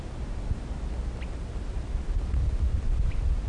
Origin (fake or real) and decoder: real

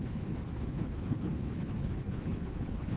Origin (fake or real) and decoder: fake, codec, HILCodec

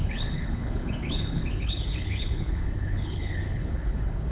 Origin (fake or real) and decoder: fake, codec, HILCodec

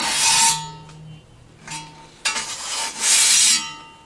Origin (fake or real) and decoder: real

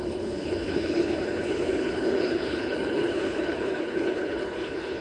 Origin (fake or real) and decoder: fake, codec, HILCodec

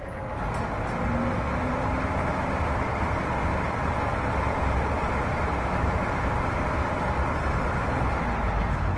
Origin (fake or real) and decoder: real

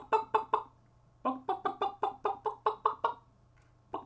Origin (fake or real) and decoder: real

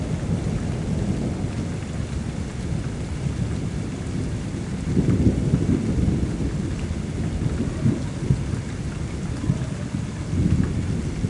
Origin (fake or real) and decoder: real